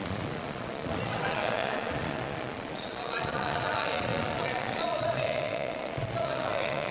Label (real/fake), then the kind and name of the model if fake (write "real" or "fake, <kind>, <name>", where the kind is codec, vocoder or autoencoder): fake, vocoder, Vocos